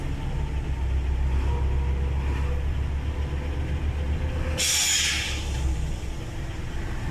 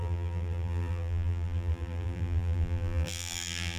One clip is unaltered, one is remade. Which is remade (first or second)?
second